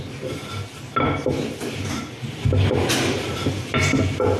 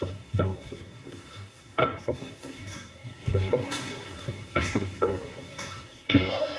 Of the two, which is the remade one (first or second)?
second